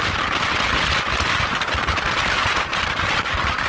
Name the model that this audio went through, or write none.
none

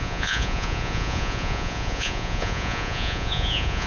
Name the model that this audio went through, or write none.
vocoder, Vocos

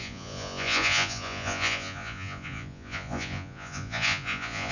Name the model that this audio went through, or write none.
vocoder, Vocos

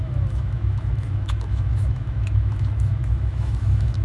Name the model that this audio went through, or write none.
autoencoder, DAC-VAE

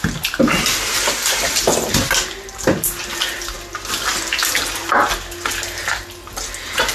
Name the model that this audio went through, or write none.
none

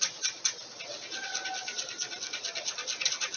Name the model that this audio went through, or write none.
none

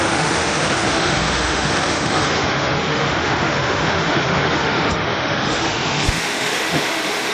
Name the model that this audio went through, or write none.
autoencoder, DAC-VAE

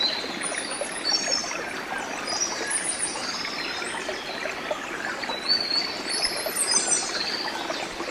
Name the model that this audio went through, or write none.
none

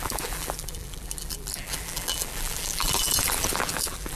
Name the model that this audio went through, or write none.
vocoder, BigVGAN v2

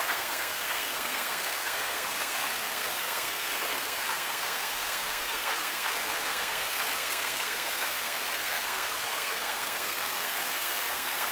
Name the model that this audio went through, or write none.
codec, SNAC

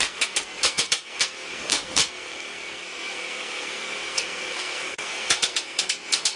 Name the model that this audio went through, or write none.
codec, SNAC